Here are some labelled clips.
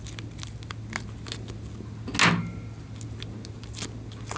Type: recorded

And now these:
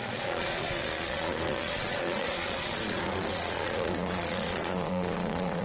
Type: remade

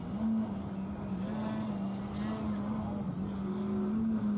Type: recorded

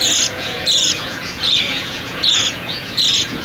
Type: remade